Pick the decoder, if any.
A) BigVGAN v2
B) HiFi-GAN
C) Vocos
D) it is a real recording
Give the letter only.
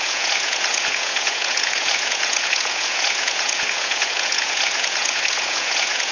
C